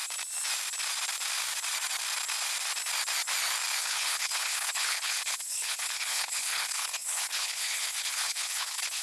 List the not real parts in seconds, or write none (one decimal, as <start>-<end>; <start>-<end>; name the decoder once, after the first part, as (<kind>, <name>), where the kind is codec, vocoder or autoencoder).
3.8-9.0 (codec, HILCodec)